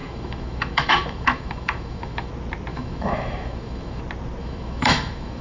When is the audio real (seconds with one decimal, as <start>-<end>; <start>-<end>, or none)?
2.3-2.7; 4.0-4.4